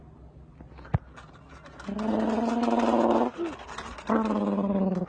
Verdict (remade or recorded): recorded